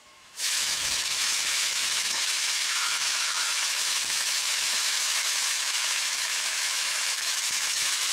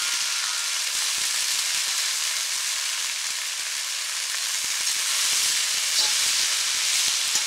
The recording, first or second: second